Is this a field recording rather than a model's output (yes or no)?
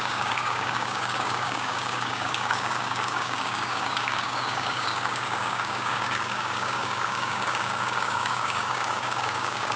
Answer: no